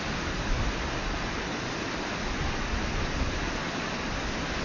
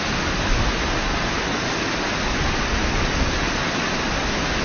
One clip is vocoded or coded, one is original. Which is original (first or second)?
second